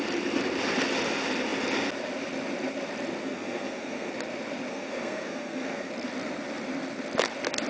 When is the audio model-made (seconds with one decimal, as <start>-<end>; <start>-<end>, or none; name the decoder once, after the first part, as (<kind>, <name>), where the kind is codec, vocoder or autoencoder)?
3.2-4.1 (codec, SNAC); 4.7-5.9